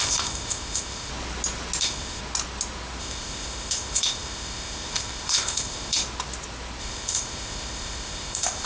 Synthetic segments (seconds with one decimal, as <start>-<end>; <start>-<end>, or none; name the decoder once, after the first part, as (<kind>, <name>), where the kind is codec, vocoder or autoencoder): 0.0-1.1 (codec, ZipCodec); 1.8-2.2; 3.0-6.0; 6.8-8.7